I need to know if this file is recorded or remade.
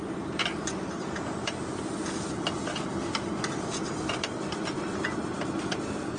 recorded